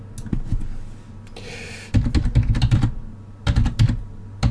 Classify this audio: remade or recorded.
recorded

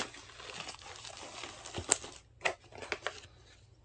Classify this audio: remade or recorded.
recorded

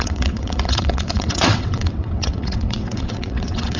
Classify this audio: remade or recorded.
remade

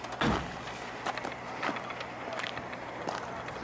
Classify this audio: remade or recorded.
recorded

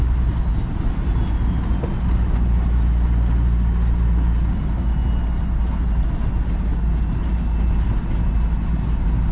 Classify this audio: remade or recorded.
recorded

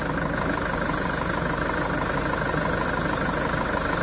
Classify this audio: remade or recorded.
recorded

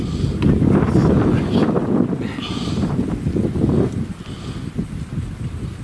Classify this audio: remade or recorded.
recorded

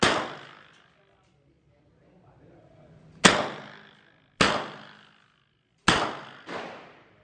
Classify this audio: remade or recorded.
recorded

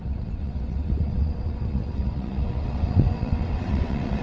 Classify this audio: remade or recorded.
remade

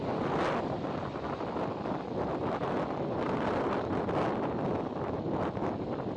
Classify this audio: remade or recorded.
recorded